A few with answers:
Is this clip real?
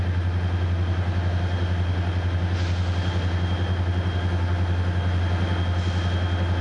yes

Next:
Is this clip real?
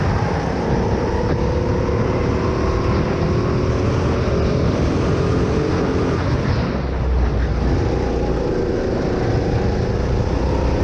yes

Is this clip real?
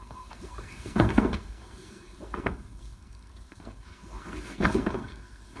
no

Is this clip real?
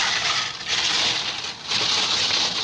yes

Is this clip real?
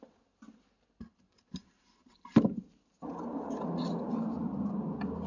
yes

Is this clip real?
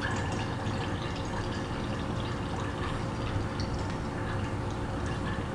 yes